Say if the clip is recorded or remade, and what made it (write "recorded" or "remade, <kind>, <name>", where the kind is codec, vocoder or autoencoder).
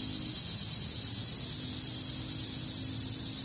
recorded